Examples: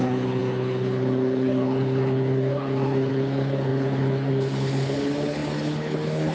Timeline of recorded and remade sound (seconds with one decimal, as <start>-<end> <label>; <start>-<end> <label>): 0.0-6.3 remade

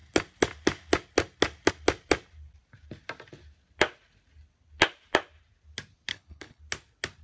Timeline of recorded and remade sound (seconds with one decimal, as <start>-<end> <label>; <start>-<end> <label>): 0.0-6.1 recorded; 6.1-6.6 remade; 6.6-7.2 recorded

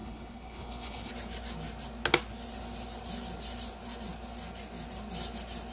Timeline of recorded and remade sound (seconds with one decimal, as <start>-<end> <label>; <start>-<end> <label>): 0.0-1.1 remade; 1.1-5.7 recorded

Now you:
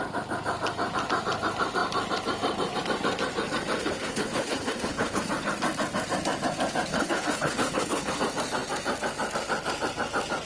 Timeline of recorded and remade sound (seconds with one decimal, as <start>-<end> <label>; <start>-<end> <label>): 0.0-3.8 recorded; 3.8-5.2 remade; 5.2-6.9 recorded; 6.9-8.2 remade; 8.2-10.4 recorded